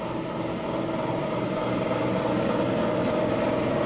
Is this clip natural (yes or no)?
yes